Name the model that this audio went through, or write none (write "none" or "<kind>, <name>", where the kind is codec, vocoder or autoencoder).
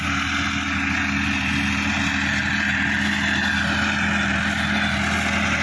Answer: none